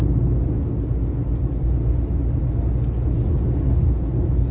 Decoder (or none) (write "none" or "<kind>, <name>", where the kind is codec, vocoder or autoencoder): none